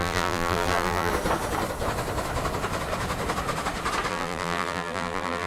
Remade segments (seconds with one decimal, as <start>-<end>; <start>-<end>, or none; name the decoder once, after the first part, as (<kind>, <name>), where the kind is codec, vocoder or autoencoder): 0.0-1.1 (vocoder, BigVGAN v2); 4.1-5.5